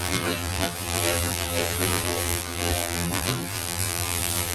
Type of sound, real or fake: fake